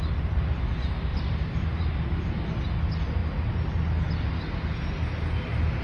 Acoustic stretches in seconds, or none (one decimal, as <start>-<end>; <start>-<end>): 0.0-1.1; 2.4-5.8